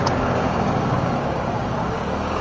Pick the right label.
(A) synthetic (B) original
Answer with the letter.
A